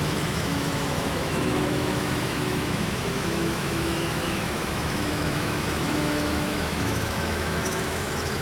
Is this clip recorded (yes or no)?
no